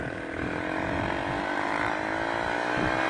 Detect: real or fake real